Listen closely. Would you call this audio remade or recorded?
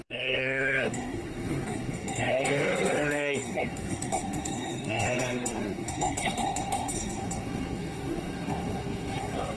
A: remade